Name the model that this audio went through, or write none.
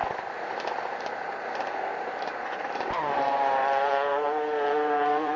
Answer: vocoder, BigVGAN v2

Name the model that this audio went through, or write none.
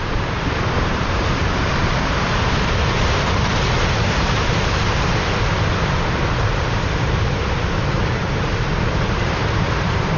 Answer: vocoder, BigVGAN v2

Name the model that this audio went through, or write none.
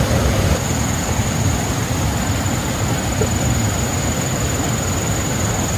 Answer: vocoder, BigVGAN v2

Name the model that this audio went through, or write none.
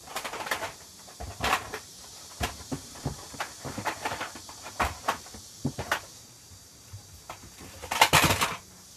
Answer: vocoder, BigVGAN v2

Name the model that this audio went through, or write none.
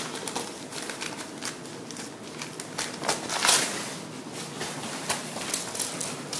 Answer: none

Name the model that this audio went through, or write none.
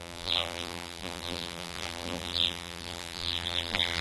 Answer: vocoder, BigVGAN v2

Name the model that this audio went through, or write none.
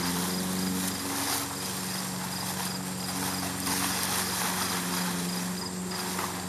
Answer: none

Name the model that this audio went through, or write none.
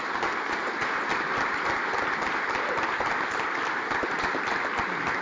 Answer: none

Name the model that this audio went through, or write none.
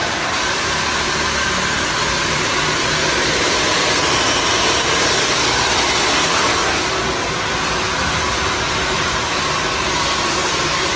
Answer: none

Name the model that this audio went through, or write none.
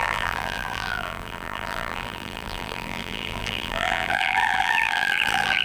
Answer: vocoder, BigVGAN v2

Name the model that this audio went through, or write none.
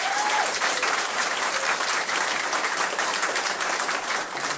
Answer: vocoder, BigVGAN v2